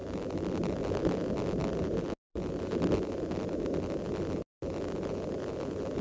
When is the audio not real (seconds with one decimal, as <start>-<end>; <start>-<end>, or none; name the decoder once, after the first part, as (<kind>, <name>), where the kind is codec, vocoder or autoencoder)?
0.0-0.8 (vocoder, BigVGAN v2); 1.6-3.9